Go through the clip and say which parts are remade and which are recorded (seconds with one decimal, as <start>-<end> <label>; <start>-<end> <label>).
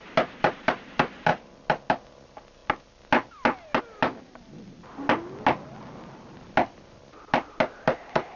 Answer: 0.0-8.4 recorded